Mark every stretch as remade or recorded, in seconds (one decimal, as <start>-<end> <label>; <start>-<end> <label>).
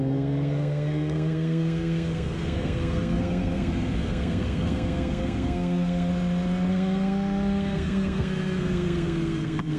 0.0-6.1 remade; 6.1-6.7 recorded; 6.7-9.8 remade